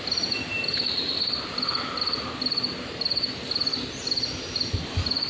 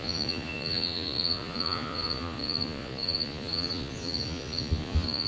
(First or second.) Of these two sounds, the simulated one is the second